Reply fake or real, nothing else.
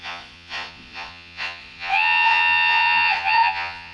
fake